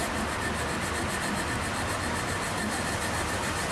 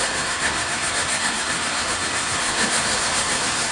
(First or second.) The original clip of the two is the first